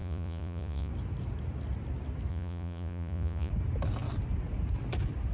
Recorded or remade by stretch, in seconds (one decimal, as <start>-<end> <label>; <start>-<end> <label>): 0.0-0.9 remade; 0.9-2.3 recorded; 2.3-3.5 remade; 3.5-5.3 recorded